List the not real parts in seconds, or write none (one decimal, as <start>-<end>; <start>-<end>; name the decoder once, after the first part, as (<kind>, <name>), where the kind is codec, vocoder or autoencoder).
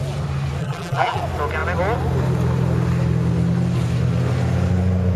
0.6-1.2 (vocoder, BigVGAN v2)